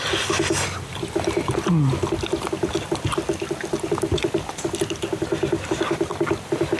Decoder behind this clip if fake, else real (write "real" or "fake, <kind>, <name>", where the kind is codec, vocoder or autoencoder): fake, vocoder, BigVGAN v2